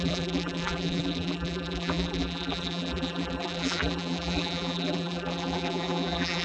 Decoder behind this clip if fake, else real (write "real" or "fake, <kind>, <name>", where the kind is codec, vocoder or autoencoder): fake, vocoder, BigVGAN v2